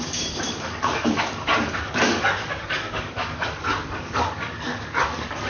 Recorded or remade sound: remade